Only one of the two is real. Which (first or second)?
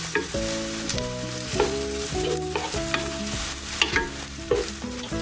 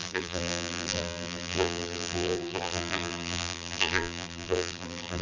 first